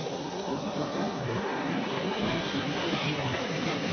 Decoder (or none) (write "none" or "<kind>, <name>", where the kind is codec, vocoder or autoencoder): codec, SNAC